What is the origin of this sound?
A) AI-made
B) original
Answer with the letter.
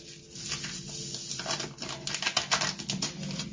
B